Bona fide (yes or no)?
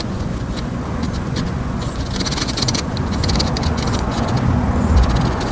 no